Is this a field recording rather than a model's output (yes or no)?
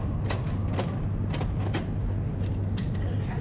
yes